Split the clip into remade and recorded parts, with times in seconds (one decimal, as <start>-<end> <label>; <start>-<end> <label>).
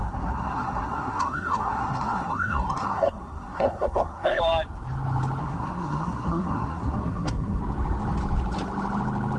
0.0-4.4 remade; 4.4-5.4 recorded; 5.4-7.6 remade; 7.6-9.4 recorded